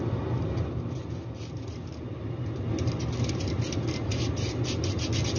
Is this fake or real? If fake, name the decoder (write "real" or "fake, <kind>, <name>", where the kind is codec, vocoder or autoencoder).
real